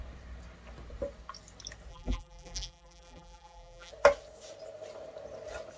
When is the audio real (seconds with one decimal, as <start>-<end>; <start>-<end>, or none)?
0.0-1.9; 3.9-5.8

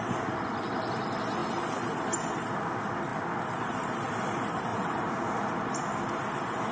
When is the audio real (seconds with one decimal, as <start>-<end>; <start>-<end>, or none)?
0.0-4.7; 5.3-6.7